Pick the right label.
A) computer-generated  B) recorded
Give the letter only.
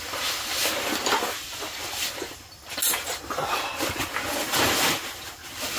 B